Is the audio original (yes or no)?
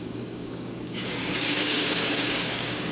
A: no